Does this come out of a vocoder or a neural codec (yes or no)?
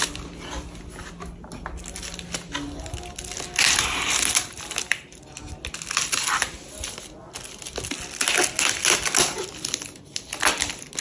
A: no